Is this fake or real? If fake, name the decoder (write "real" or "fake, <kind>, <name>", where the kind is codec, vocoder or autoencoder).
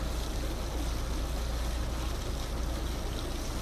real